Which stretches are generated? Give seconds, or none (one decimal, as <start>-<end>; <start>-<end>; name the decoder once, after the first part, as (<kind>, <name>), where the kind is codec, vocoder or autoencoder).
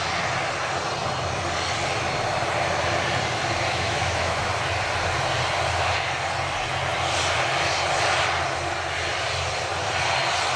3.7-4.4 (autoencoder, DAC-VAE)